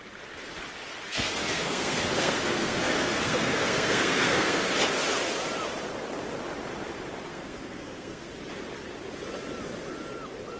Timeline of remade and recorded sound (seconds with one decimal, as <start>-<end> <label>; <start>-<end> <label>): 0.0-1.1 recorded; 1.1-4.7 remade; 4.7-7.3 recorded; 7.3-8.3 remade; 8.3-10.6 recorded